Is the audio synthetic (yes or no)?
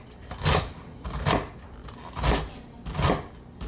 no